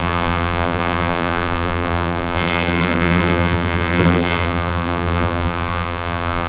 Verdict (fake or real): fake